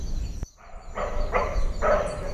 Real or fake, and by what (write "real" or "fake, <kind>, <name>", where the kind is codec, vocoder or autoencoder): fake, vocoder, BigVGAN v2